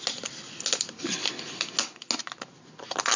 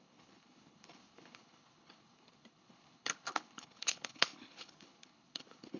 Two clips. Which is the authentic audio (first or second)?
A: first